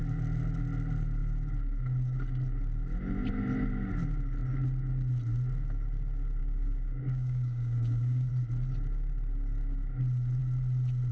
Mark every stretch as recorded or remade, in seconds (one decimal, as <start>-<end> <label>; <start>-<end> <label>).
0.0-6.4 recorded; 6.4-8.3 remade; 8.3-11.1 recorded